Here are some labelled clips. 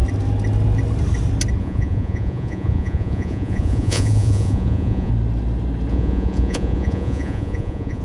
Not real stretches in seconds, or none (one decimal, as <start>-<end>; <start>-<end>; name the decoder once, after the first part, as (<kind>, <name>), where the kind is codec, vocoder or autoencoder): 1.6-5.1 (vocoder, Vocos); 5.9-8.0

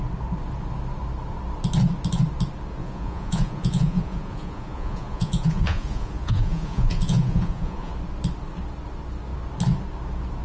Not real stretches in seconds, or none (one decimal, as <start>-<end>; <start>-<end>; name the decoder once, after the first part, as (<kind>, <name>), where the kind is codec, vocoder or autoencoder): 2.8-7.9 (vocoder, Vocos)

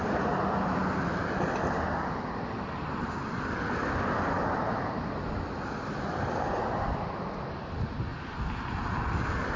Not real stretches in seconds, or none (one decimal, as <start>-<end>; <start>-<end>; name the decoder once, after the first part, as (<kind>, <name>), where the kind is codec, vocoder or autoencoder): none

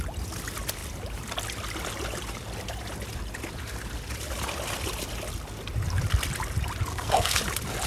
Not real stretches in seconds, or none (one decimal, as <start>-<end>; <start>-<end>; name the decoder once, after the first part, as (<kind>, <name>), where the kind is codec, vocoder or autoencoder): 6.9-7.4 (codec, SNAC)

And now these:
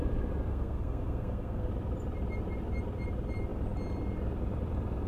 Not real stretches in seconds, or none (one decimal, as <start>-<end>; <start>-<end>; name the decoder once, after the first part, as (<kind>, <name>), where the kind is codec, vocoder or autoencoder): 0.5-1.7 (codec, SNAC)